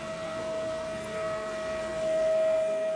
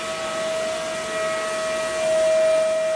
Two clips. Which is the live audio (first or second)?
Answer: second